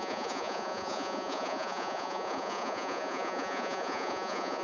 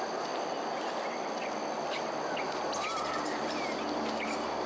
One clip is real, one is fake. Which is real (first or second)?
second